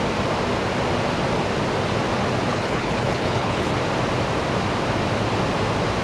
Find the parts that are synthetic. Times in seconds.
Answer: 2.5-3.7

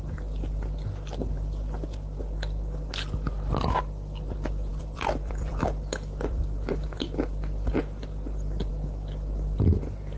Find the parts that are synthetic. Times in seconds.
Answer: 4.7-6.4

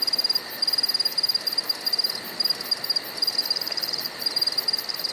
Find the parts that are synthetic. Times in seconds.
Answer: none